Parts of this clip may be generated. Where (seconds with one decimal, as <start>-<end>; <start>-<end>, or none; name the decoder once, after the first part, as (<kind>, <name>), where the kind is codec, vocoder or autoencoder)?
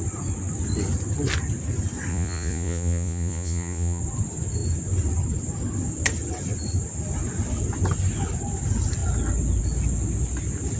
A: 2.1-4.0 (vocoder, Vocos)